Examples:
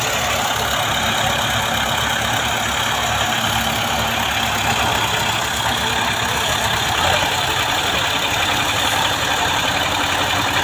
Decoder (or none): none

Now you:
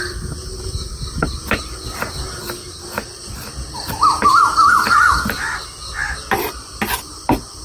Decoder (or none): none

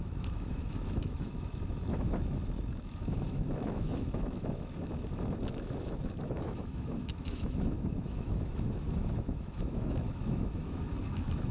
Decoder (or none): autoencoder, DAC-VAE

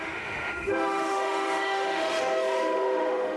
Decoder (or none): autoencoder, DAC-VAE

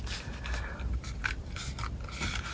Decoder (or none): none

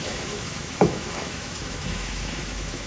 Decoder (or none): autoencoder, DAC-VAE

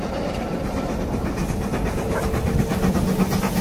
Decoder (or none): none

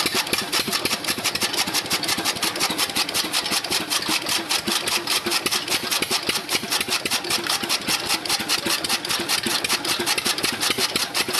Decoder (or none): none